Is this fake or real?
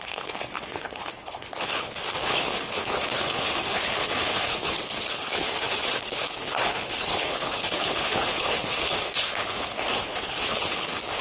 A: fake